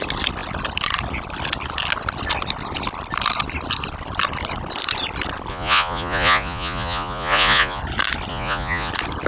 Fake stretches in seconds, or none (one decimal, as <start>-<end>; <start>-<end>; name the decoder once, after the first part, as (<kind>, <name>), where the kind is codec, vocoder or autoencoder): 5.5-7.8 (vocoder, Vocos); 8.3-8.9